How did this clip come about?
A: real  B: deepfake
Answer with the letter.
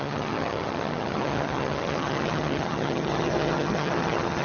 B